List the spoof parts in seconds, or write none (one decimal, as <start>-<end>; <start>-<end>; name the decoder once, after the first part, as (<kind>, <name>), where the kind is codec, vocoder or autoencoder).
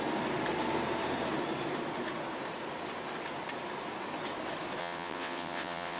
4.8-6.0 (vocoder, WaveNeXt)